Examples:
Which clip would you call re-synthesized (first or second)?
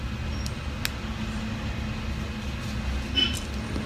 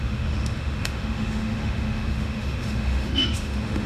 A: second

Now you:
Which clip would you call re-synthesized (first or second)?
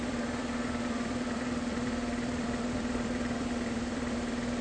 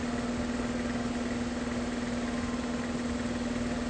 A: first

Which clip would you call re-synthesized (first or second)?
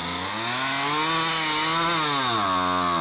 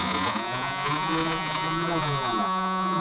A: second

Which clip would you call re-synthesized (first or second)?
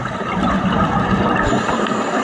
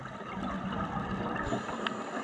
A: first